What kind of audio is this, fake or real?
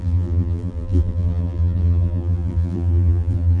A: fake